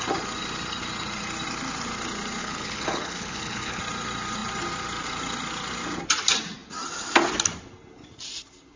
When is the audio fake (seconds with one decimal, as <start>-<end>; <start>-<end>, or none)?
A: 2.4-3.8